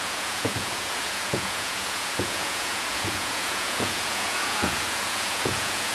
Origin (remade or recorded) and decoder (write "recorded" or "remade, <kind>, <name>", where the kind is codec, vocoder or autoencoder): remade, vocoder, Vocos